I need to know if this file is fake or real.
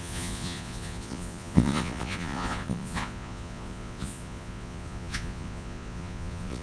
fake